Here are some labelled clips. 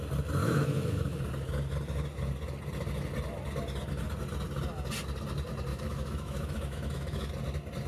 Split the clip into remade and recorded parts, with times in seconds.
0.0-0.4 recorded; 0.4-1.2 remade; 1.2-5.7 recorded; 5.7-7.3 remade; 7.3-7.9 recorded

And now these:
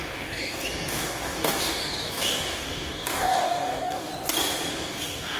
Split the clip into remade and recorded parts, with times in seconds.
0.0-4.1 remade; 4.1-4.7 recorded; 4.7-5.4 remade

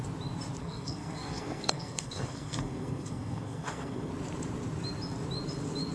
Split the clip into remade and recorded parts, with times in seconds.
0.0-0.6 recorded; 0.6-4.1 remade; 4.1-5.9 recorded